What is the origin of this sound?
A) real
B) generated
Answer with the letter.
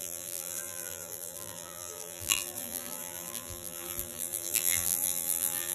B